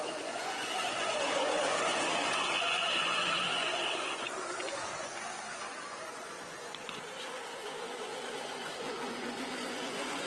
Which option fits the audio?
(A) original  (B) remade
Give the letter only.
B